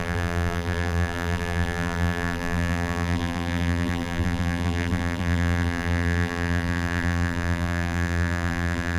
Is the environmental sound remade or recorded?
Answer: remade